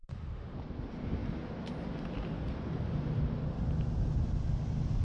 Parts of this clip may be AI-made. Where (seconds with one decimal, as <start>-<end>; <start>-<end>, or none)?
0.0-0.6